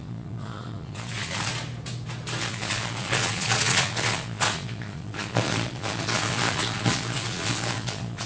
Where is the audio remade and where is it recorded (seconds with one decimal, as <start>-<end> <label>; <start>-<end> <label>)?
0.0-1.5 remade; 1.5-2.4 recorded; 2.4-8.3 remade